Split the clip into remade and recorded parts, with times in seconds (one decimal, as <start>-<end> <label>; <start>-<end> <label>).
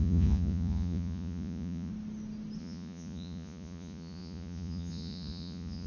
0.0-1.9 remade; 1.9-2.6 recorded; 2.6-5.9 remade